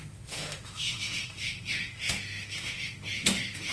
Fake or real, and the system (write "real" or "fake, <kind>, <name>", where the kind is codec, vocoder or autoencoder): fake, autoencoder, DAC-VAE